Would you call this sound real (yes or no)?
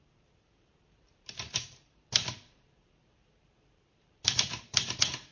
no